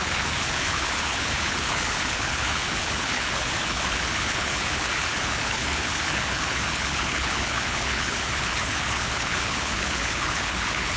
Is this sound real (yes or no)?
no